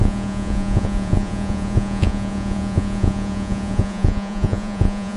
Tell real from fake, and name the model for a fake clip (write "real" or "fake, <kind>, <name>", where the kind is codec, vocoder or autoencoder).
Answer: fake, vocoder, Vocos